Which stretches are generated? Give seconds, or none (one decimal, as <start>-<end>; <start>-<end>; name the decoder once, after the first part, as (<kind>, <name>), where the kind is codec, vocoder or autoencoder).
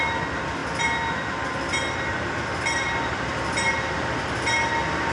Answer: none